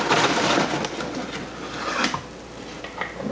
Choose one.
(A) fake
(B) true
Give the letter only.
B